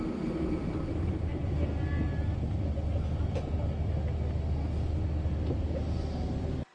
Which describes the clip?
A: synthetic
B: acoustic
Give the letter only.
B